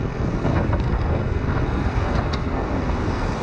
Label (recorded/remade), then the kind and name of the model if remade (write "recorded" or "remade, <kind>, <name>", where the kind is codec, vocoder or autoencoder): remade, codec, SNAC